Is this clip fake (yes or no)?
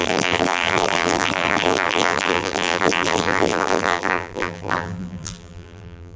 yes